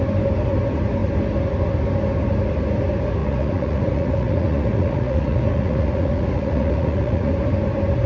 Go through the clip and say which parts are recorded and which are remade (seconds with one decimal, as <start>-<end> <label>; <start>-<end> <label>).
0.0-3.2 recorded; 3.2-7.3 remade; 7.3-8.1 recorded